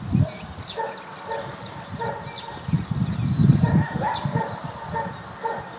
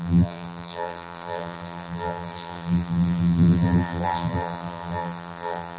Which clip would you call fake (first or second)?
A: second